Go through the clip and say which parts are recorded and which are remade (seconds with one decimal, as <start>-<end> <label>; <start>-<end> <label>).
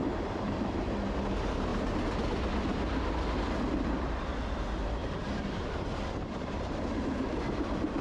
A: 0.0-0.9 remade; 0.9-5.0 recorded; 5.0-6.7 remade; 6.7-8.0 recorded